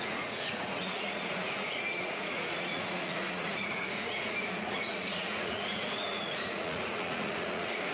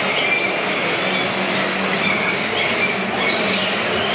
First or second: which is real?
second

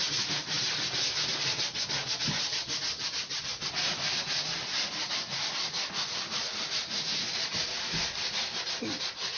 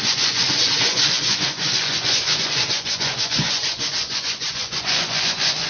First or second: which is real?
first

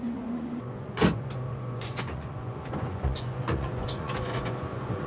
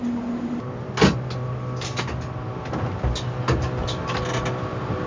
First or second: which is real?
second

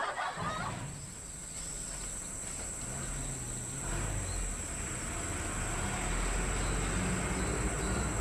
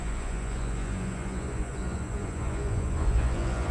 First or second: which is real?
first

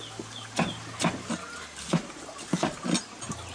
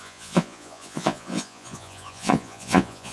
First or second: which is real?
first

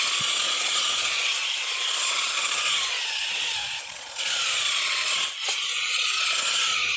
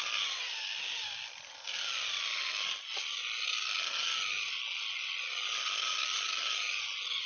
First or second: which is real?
second